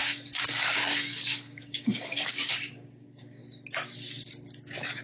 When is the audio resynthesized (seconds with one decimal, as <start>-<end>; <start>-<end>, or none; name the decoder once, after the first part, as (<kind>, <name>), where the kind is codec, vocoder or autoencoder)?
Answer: 0.0-3.4 (codec, DAC)

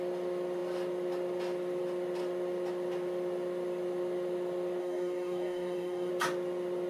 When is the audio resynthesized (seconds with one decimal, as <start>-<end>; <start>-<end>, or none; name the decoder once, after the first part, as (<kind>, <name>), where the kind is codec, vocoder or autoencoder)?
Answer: 4.8-6.1 (codec, DAC)

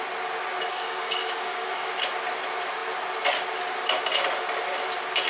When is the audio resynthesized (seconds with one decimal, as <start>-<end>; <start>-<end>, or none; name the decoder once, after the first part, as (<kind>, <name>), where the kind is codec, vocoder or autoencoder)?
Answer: 0.7-1.9 (codec, DAC)

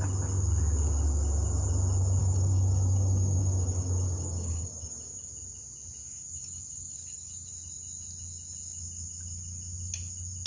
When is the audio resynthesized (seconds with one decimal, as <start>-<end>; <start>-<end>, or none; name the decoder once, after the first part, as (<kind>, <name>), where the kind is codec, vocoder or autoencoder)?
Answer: 2.2-5.3 (codec, DAC); 6.0-7.5